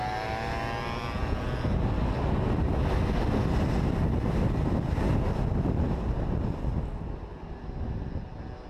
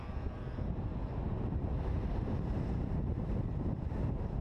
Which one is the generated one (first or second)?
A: second